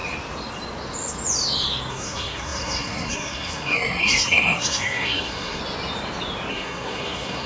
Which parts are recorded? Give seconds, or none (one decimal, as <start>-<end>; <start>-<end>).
0.0-1.9; 5.6-6.5